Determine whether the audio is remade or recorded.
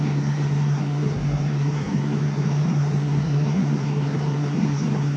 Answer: remade